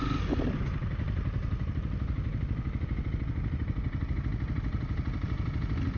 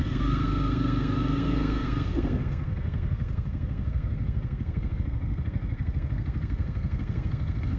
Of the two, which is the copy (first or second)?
second